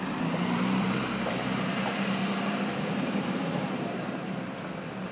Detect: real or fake fake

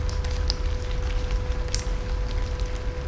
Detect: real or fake real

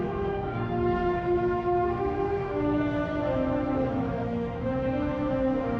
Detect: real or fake fake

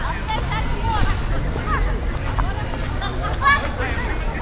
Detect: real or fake real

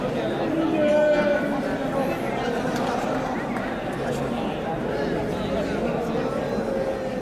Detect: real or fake real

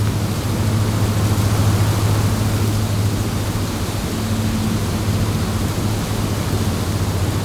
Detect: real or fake real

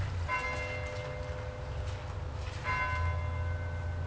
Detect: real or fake real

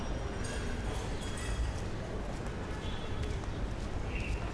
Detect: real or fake real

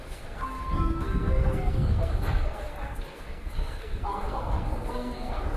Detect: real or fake fake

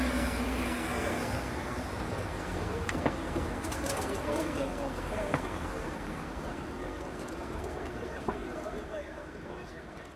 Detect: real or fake fake